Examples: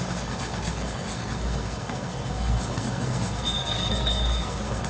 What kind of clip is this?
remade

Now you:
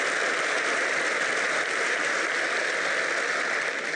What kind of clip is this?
recorded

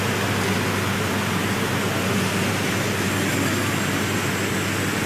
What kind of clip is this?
recorded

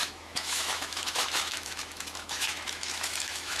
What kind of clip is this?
remade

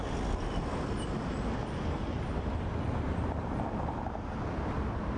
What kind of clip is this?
recorded